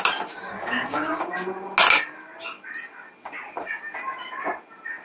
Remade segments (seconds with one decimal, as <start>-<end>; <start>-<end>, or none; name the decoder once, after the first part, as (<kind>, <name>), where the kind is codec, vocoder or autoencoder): 0.5-1.2 (codec, DAC)